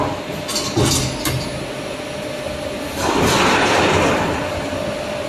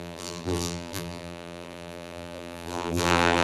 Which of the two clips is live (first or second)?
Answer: first